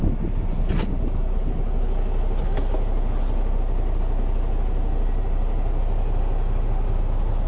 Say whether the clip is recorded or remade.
recorded